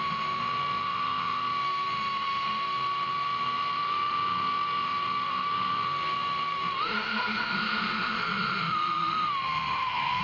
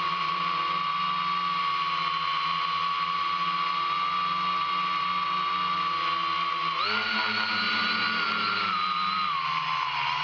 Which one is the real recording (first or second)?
second